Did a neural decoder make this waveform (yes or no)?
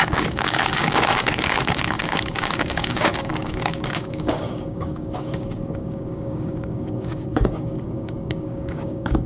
yes